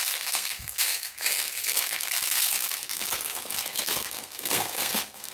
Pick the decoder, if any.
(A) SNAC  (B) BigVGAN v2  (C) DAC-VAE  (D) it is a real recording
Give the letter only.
A